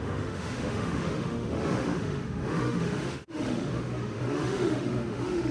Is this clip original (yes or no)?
no